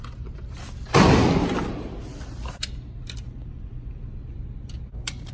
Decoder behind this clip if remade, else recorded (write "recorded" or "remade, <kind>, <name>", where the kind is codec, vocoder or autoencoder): recorded